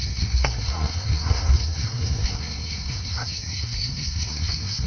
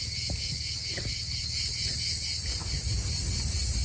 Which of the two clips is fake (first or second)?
first